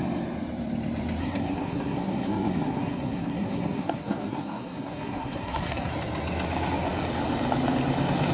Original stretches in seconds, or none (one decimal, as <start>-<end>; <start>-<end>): 0.0-1.2; 5.9-8.3